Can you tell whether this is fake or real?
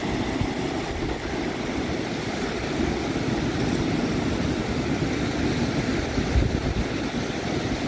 real